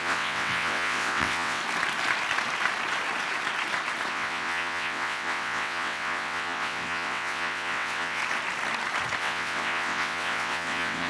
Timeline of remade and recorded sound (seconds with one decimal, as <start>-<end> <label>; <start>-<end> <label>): 0.0-1.6 remade; 1.6-4.1 recorded; 4.1-8.2 remade; 8.2-9.2 recorded; 9.2-11.1 remade